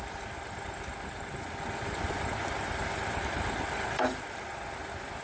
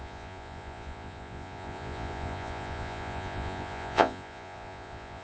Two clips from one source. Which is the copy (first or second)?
second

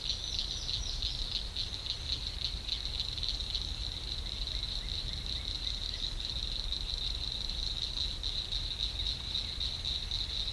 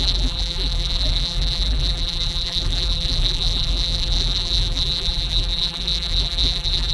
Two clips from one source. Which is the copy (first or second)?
second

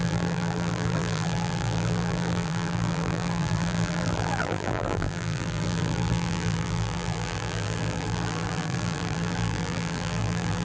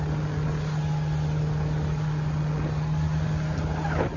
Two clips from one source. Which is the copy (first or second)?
first